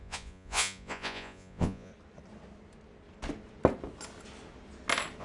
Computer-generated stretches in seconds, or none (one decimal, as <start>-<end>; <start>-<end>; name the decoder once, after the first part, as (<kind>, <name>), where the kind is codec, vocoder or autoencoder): 0.0-1.9 (vocoder, Vocos)